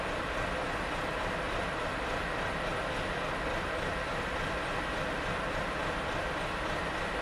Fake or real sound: real